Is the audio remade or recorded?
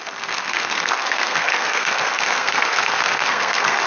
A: remade